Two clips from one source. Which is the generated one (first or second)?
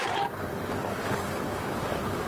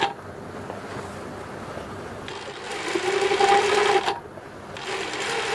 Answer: first